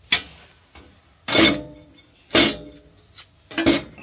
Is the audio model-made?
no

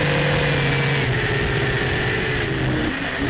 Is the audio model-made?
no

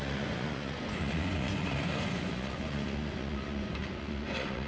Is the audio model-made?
yes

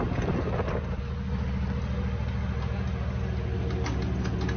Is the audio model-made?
no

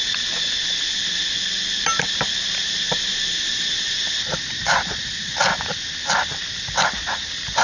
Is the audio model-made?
no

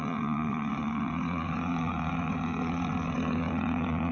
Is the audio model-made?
yes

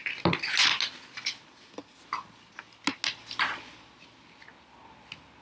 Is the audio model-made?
no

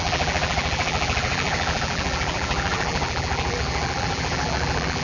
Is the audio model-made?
yes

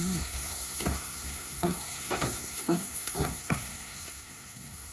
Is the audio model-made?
yes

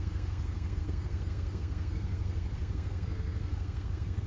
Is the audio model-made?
yes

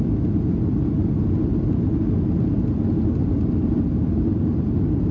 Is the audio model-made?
no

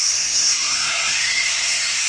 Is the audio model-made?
yes